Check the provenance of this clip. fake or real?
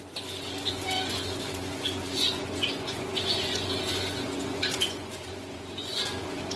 fake